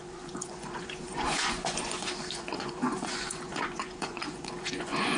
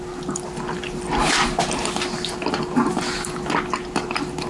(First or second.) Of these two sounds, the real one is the second